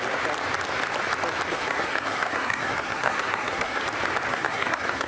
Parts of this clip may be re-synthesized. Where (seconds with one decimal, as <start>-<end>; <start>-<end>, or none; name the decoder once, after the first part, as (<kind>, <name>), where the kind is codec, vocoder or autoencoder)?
1.5-3.8 (codec, SNAC); 4.3-5.1